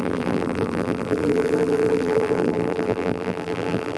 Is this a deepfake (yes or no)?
yes